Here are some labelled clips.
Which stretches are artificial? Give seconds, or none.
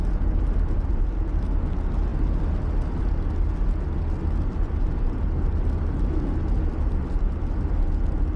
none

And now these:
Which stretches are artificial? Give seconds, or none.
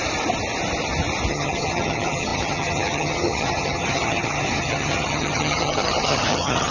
1.3-6.7 (vocoder, HiFi-GAN)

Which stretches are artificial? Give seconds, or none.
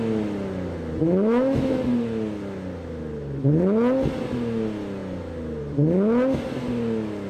1.0-1.8 (autoencoder, DAC-VAE)